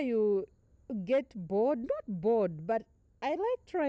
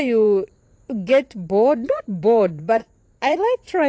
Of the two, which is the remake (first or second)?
second